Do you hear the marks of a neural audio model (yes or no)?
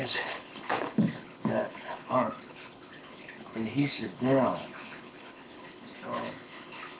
yes